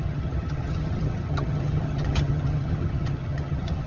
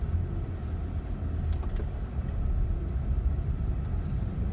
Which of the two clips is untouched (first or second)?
second